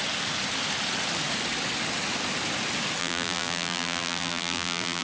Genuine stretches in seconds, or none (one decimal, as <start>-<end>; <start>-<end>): 0.0-3.0